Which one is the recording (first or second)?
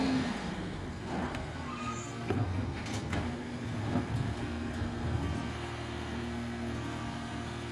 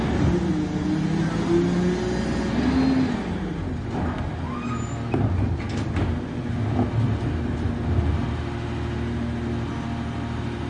second